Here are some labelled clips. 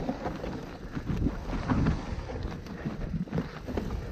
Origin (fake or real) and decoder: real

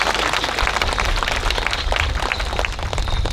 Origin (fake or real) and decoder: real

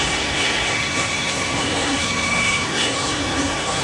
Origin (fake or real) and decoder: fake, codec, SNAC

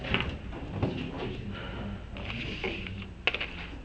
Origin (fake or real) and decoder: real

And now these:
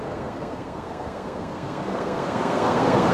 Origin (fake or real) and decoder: fake, codec, SNAC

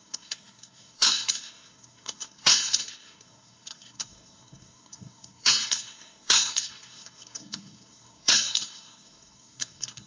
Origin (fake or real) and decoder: fake, codec, SNAC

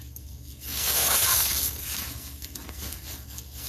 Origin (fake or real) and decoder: fake, codec, SNAC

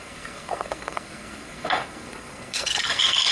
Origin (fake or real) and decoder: fake, codec, SNAC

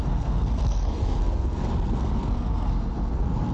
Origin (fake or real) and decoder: fake, codec, SNAC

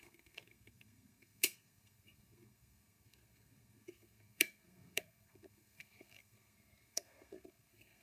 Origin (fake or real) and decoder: fake, codec, SNAC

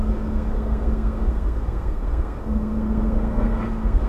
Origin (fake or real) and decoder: fake, codec, SNAC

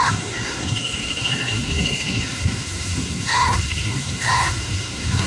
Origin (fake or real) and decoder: fake, codec, SNAC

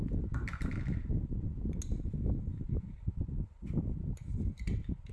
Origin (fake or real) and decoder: real